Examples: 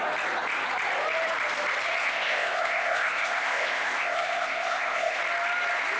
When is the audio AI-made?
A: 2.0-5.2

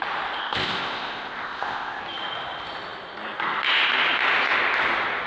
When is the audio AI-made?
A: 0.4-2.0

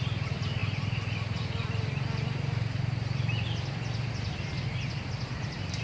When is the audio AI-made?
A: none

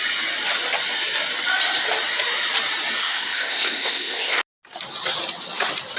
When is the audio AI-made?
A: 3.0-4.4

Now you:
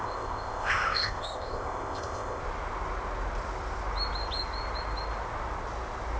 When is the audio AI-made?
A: 0.0-2.4

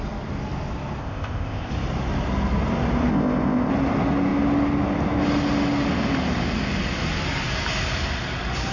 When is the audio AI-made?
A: 1.0-1.7; 3.1-3.7

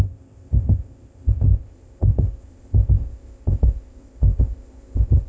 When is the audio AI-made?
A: 0.0-5.3